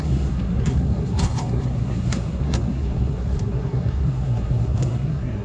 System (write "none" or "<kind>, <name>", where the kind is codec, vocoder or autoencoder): codec, SNAC